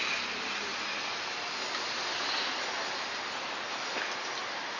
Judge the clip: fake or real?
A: real